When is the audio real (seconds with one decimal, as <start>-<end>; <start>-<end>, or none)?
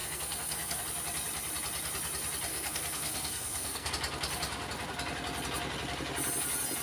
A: 0.8-2.5; 3.9-6.8